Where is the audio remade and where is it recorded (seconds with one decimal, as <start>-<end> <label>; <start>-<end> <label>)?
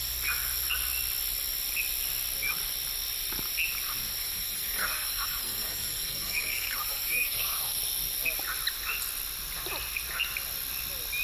0.0-4.2 recorded; 4.2-7.8 remade; 7.8-11.2 recorded